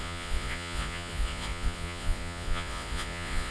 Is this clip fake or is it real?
fake